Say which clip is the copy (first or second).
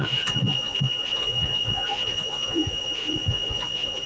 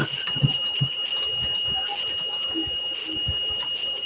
first